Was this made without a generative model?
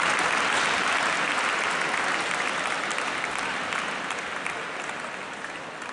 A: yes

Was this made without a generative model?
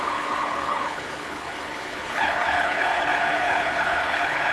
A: no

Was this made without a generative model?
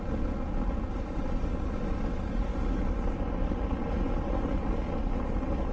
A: yes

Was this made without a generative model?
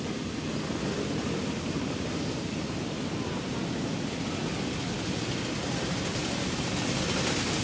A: yes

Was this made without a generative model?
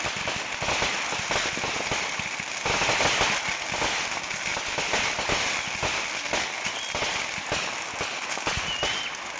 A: yes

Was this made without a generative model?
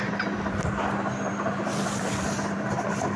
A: no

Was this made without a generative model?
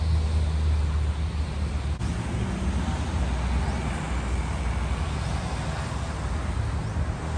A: yes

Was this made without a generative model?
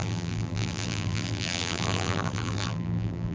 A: no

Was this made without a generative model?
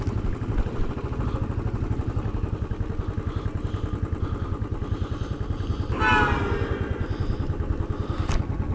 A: yes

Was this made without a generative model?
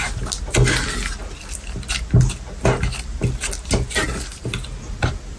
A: yes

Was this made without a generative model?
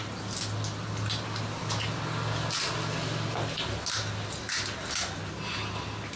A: yes